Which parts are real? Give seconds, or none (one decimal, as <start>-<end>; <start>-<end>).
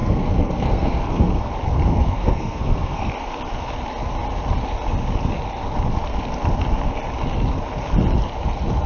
1.5-1.9; 3.1-8.9